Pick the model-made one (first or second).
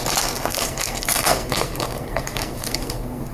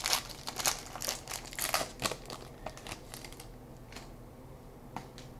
first